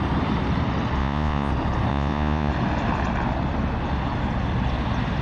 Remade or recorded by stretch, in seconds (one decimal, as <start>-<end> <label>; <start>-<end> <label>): 0.0-1.0 recorded; 1.0-1.5 remade; 1.5-1.9 recorded; 1.9-2.5 remade; 2.5-5.2 recorded